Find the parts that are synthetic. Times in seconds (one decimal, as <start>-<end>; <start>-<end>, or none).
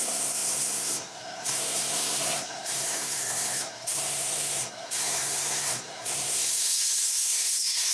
0.0-7.9